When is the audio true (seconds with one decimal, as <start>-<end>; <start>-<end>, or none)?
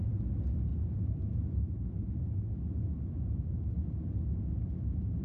0.0-0.7; 3.6-5.2